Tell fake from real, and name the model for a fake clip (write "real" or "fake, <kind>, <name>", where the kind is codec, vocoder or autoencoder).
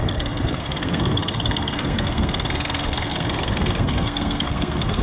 fake, codec, SNAC